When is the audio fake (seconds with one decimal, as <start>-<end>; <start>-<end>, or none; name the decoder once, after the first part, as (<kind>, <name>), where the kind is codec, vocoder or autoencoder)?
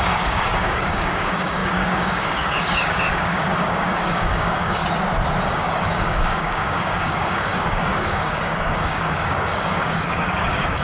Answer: 0.0-4.8 (codec, DAC); 5.4-10.8